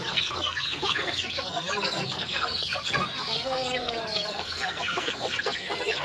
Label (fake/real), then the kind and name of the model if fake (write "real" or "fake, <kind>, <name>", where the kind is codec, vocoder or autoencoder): fake, codec, SNAC